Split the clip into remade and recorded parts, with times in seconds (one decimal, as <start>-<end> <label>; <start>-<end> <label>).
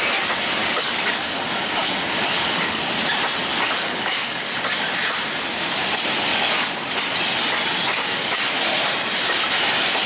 0.0-0.6 recorded; 0.6-1.9 remade; 1.9-2.3 recorded; 2.3-2.9 remade; 2.9-3.5 recorded; 3.5-4.6 remade; 4.6-6.3 recorded; 6.3-7.0 remade; 7.0-10.1 recorded